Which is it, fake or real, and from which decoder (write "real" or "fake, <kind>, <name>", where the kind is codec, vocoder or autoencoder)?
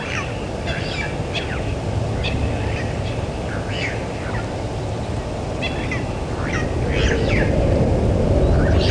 real